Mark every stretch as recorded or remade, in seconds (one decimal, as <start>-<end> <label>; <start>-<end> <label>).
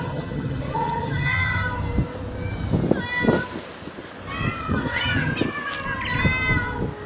0.0-1.6 remade; 1.6-4.6 recorded; 4.6-5.3 remade; 5.3-7.1 recorded